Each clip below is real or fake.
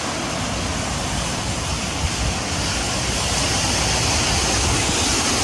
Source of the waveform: real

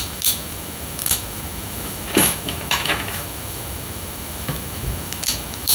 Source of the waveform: fake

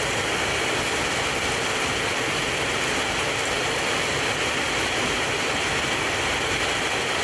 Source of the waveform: real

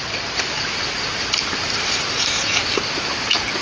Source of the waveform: real